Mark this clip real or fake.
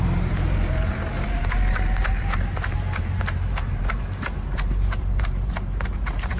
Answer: fake